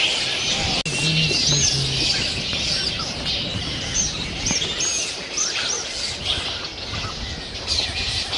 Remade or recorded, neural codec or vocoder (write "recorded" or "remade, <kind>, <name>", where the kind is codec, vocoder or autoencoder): recorded